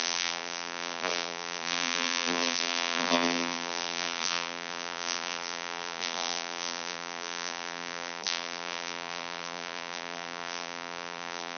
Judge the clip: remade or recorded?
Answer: remade